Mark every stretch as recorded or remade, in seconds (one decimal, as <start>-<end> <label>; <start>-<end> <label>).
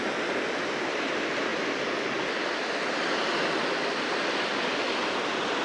0.0-5.6 recorded